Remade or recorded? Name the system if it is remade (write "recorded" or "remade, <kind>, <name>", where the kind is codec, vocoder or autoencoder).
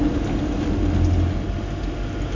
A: recorded